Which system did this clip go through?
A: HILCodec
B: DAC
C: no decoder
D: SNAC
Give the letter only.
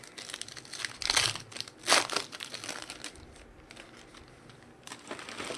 C